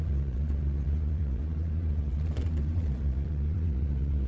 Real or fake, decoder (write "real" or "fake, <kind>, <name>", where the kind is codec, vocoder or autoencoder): fake, vocoder, Vocos